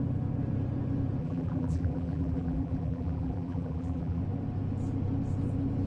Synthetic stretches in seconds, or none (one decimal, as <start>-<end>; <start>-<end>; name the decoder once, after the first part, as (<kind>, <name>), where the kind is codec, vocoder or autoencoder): 1.2-4.2 (vocoder, BigVGAN v2)